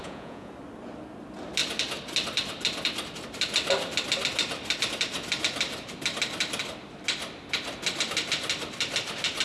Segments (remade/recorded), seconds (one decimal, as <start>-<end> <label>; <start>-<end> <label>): 0.0-0.5 remade; 0.5-9.4 recorded